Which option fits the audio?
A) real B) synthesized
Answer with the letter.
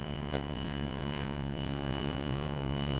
B